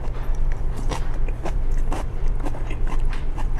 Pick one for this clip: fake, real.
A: fake